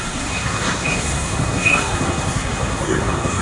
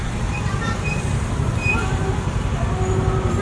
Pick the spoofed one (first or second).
first